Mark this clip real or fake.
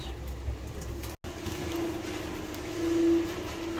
real